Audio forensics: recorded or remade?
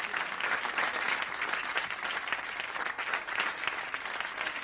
recorded